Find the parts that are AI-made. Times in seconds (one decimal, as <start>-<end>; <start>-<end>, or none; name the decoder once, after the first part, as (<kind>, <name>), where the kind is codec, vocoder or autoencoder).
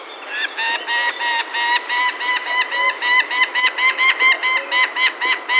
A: none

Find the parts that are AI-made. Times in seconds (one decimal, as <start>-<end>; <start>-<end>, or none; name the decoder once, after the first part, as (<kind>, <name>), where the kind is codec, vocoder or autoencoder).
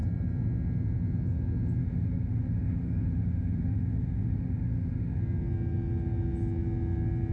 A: 1.8-5.2 (autoencoder, DAC-VAE)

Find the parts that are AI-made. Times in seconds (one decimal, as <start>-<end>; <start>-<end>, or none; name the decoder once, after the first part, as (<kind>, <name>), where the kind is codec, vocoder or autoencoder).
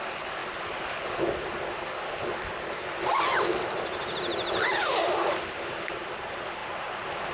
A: none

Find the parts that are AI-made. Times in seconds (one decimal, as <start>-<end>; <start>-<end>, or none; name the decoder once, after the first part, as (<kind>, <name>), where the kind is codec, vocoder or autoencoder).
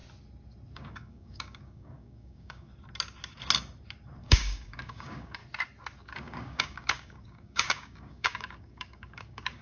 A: 0.7-2.7 (codec, DAC); 4.2-5.4; 6.0-9.6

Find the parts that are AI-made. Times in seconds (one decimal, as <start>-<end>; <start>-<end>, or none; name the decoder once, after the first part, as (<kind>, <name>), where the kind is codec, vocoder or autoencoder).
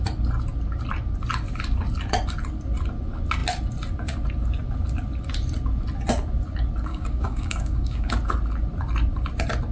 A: 6.9-8.1 (codec, DAC)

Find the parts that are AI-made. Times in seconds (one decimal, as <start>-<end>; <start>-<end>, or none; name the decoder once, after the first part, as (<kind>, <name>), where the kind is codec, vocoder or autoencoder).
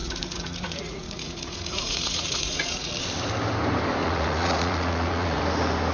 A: 0.0-2.9 (vocoder, Vocos); 4.0-5.4